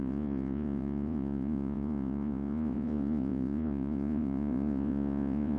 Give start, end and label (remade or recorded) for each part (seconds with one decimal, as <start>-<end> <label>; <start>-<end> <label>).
0.0-5.6 remade